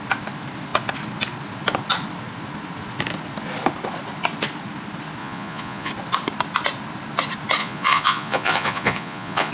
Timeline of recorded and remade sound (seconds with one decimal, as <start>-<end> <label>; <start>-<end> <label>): 0.0-5.2 recorded; 5.2-5.9 remade; 5.9-7.6 recorded; 7.6-9.5 remade